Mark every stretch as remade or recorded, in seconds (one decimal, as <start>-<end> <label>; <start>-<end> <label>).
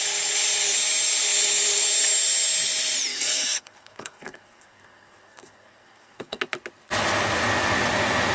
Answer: 0.0-3.1 recorded; 3.1-6.4 remade; 6.4-8.3 recorded